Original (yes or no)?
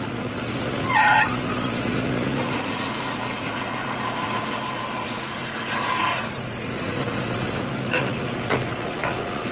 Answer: no